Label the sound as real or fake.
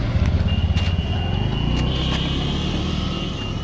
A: real